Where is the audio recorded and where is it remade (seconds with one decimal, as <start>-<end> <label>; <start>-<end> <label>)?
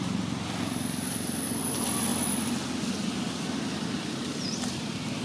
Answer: 0.0-5.2 recorded